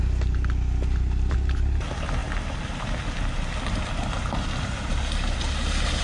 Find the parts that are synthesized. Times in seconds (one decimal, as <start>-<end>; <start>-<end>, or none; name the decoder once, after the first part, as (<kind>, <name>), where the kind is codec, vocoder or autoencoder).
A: none